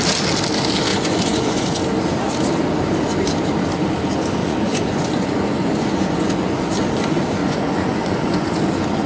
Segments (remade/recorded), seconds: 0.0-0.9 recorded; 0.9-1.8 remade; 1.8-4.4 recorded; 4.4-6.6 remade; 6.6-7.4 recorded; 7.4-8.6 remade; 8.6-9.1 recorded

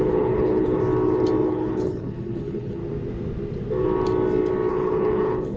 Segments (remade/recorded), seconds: 0.0-0.8 remade; 0.8-1.5 recorded; 1.5-2.8 remade; 2.8-4.7 recorded; 4.7-5.6 remade

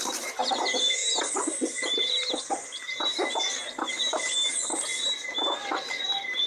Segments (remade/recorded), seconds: 0.0-1.0 remade; 1.0-4.0 recorded; 4.0-4.9 remade; 4.9-5.8 recorded; 5.8-6.5 remade